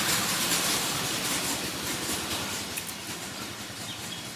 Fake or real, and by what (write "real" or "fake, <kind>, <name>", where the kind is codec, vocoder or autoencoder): real